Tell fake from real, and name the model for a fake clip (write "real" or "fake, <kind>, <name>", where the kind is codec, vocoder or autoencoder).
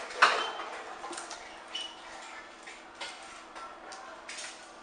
real